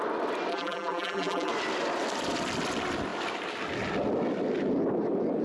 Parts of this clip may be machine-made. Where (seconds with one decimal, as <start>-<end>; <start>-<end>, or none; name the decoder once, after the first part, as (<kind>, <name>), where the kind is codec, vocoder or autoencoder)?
0.5-1.5 (vocoder, BigVGAN v2)